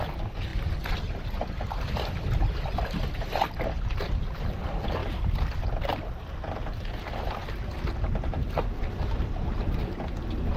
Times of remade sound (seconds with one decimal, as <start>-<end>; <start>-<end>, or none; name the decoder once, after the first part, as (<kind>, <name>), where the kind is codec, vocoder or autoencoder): none